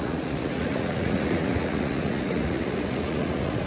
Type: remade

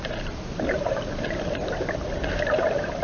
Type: recorded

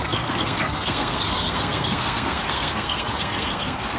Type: remade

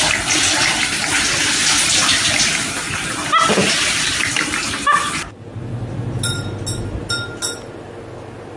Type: recorded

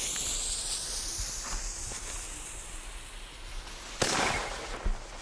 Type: recorded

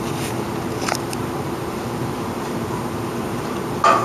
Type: remade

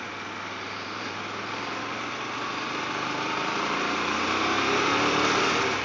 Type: recorded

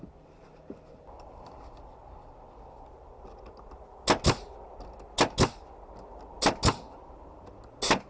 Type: recorded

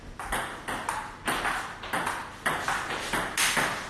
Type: recorded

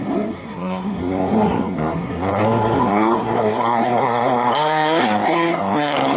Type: remade